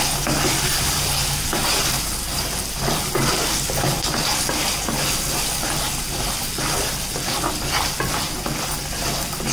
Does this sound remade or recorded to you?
recorded